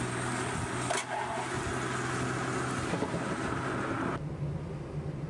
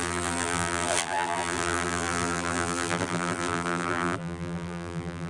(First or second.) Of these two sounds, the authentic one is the first